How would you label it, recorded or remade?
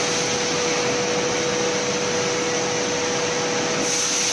recorded